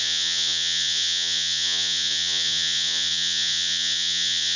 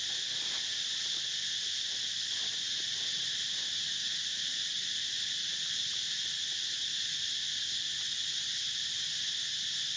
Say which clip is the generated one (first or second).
first